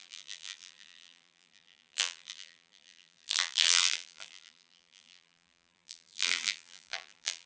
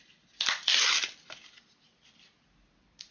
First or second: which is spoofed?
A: first